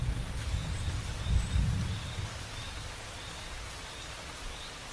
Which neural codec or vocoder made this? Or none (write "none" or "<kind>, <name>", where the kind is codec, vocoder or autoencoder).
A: none